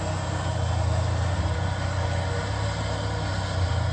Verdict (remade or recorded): recorded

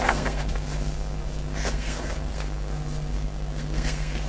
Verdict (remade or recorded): remade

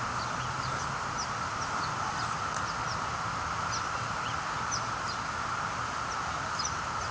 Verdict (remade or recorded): recorded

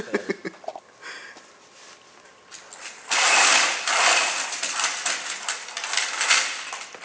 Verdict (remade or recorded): recorded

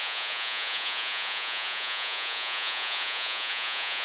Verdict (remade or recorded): remade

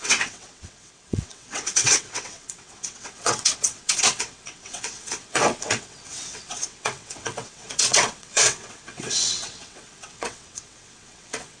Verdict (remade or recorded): remade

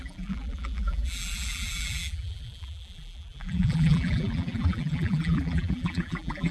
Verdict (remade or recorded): remade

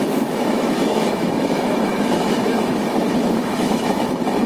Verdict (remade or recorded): remade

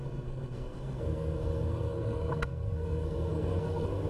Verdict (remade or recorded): remade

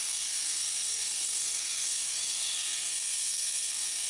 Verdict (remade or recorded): remade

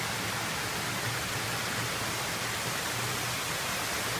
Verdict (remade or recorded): recorded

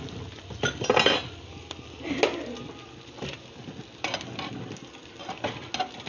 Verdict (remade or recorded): recorded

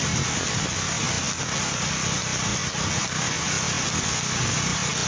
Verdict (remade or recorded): recorded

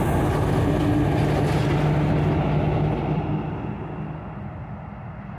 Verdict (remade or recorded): recorded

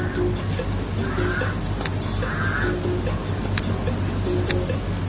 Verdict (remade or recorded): recorded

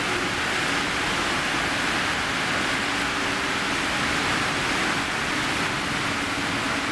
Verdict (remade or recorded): recorded